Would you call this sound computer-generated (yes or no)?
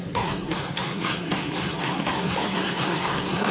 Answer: yes